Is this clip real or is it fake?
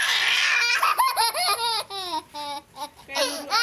real